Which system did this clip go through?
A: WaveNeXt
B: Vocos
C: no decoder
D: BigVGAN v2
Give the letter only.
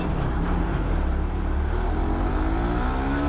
C